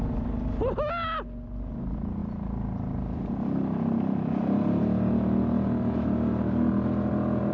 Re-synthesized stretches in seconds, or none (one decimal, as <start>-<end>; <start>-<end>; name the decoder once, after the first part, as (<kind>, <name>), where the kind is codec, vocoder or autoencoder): none